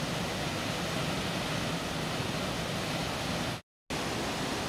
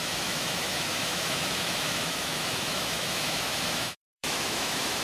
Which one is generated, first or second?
second